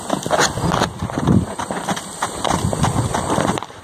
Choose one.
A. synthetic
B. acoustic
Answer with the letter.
B